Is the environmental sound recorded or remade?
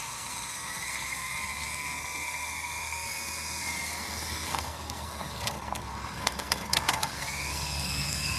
remade